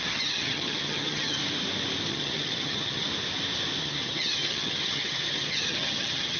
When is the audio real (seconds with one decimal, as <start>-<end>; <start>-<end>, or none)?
1.4-2.1; 3.1-3.8